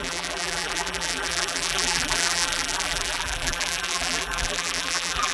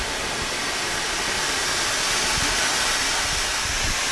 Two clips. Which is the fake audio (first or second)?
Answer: first